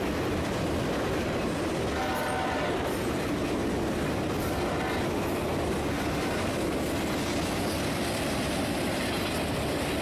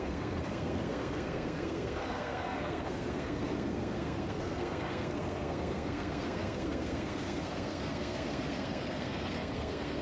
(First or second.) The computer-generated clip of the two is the second